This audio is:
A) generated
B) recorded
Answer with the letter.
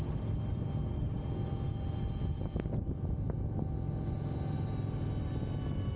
B